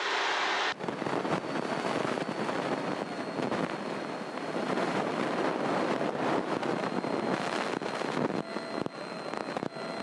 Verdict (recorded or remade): remade